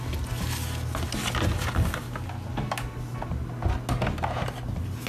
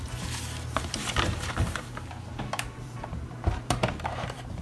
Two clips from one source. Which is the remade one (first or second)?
second